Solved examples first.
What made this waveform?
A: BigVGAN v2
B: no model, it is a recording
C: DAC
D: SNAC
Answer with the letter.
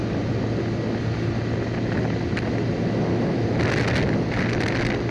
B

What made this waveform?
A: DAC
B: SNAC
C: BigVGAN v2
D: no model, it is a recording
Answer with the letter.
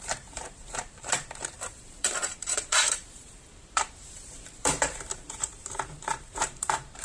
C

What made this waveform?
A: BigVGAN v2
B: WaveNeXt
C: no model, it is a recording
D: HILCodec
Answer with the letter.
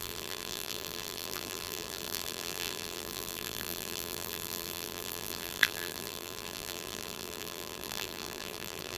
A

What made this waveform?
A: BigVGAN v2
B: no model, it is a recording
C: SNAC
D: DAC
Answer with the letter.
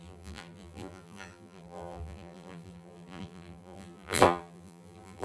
A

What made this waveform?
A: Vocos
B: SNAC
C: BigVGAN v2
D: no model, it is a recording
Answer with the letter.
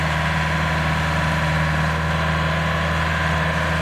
D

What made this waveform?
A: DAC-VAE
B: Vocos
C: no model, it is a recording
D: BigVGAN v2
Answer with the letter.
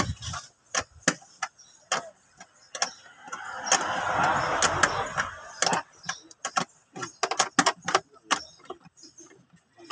C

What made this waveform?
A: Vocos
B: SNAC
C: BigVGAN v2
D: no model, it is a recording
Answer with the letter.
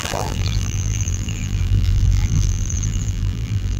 C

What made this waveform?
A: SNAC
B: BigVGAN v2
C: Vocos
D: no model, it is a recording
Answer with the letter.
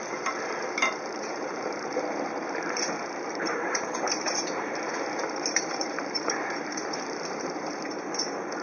B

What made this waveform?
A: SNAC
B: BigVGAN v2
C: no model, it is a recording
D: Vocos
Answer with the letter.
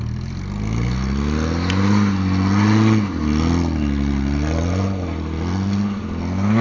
C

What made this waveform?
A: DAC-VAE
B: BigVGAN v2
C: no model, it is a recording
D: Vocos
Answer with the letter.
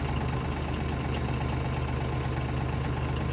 C